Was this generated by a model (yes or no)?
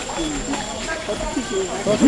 no